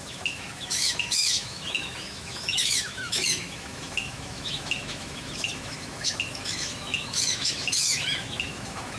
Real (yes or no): no